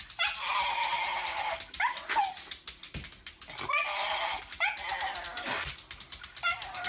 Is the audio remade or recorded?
recorded